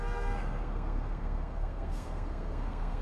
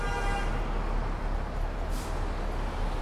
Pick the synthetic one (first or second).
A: first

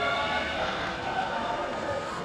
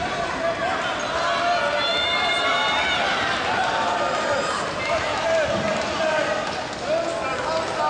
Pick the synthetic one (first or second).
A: first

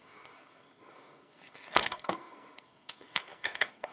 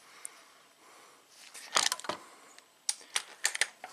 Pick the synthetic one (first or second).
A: first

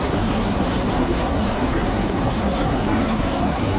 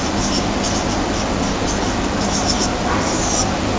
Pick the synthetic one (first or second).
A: first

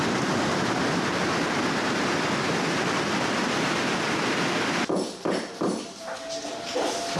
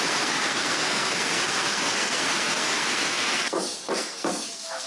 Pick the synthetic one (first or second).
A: second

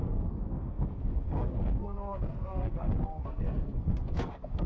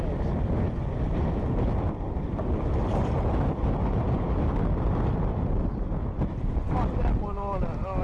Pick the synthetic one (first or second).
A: first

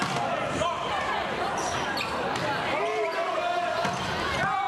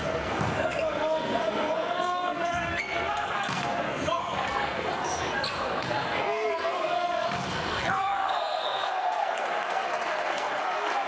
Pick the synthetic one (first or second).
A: second